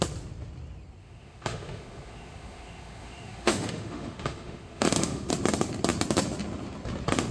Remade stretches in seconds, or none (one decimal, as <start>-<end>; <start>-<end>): 1.0-5.3